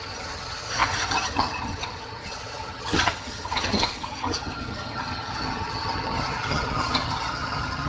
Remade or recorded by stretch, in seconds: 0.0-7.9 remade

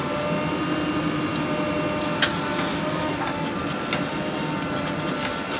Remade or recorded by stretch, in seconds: 0.0-5.6 recorded

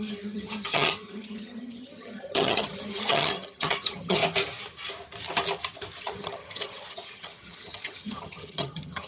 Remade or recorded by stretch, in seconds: 0.0-4.2 remade; 4.2-6.0 recorded; 6.0-9.1 remade

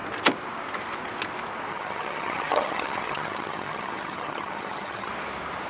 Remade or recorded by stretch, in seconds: 0.0-1.7 recorded; 1.7-5.1 remade; 5.1-5.7 recorded

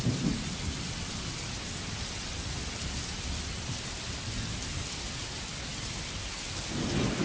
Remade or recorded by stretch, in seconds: 0.0-7.2 recorded

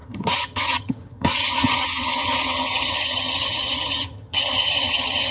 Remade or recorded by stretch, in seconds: 0.0-5.3 remade

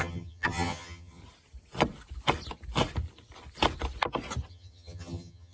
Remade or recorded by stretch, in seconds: 0.0-1.2 remade; 1.2-4.5 recorded; 4.5-5.5 remade